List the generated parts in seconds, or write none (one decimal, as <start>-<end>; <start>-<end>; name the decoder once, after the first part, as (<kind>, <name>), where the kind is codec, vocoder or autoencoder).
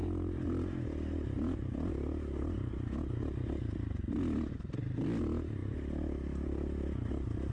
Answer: none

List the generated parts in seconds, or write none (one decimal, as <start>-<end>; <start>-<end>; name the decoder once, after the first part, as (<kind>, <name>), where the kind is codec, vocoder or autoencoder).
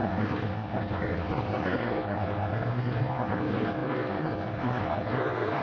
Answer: 0.0-5.6 (codec, SNAC)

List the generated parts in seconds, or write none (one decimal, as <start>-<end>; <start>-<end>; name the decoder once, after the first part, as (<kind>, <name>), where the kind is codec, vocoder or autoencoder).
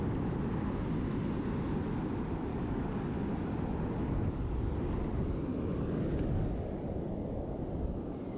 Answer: 2.5-3.0 (codec, DAC); 5.5-7.6